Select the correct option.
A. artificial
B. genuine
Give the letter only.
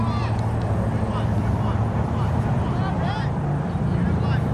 B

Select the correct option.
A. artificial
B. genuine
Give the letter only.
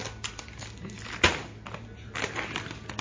B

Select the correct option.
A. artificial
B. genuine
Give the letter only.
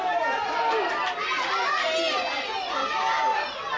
B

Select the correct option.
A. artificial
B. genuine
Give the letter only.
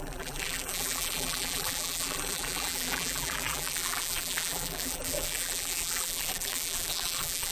A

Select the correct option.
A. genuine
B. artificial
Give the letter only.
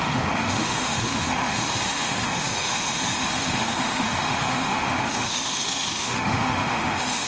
B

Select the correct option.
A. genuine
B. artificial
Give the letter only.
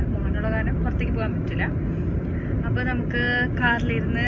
A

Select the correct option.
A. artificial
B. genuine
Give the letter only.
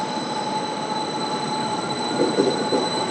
A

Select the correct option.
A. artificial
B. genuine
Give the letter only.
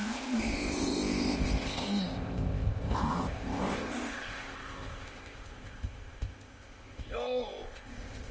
A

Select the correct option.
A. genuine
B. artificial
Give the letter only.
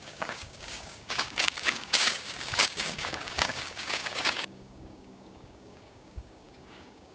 B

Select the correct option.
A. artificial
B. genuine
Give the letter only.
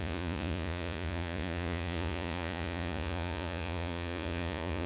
A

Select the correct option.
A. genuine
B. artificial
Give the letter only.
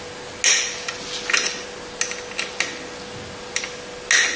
A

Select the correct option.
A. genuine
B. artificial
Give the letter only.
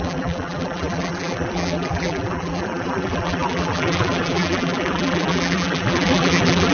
B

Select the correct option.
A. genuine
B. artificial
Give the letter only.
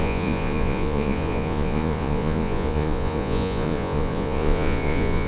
B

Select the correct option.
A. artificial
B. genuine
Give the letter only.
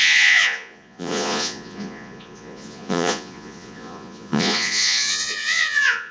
A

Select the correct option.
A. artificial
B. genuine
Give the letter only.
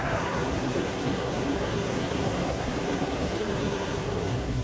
A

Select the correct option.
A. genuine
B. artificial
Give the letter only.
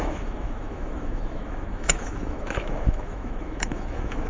B